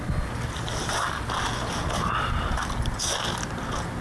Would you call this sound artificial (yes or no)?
no